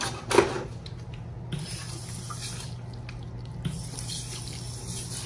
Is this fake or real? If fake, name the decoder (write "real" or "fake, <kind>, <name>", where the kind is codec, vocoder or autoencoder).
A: real